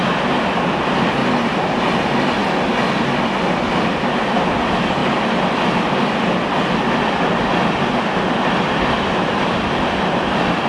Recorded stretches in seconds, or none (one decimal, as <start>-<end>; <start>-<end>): 0.0-1.2; 1.8-10.7